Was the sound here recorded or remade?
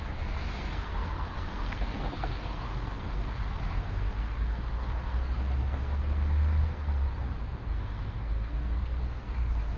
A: remade